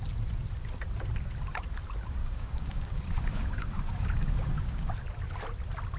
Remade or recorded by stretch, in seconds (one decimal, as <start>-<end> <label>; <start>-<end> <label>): 0.0-2.2 recorded; 2.2-4.9 remade; 4.9-6.0 recorded